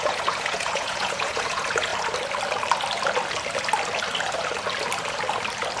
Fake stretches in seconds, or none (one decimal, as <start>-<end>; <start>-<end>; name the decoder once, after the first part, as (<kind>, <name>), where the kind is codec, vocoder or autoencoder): 0.0-1.9 (vocoder, Vocos)